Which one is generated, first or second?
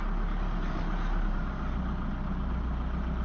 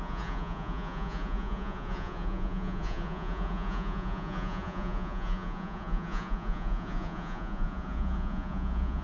second